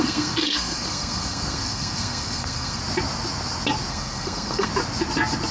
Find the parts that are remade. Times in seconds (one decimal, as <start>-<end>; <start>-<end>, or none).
0.0-2.8; 3.9-4.7